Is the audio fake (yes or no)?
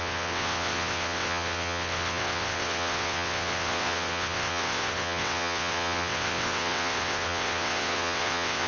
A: yes